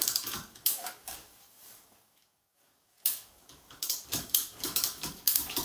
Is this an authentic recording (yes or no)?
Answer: no